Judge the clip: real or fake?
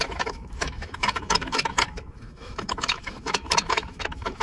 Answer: fake